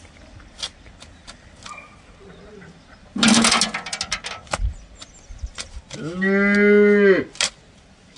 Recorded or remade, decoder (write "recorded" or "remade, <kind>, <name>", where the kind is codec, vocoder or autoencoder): recorded